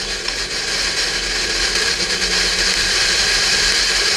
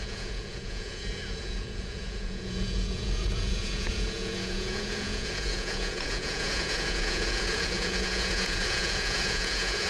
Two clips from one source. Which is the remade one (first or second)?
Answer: second